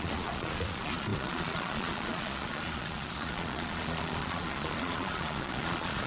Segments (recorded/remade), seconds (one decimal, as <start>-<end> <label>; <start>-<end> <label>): 0.0-6.1 remade